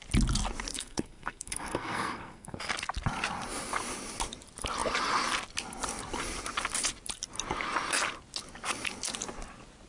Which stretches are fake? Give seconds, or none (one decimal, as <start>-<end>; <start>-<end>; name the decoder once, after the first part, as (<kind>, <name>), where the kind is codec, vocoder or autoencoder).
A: 0.7-2.6 (codec, SNAC)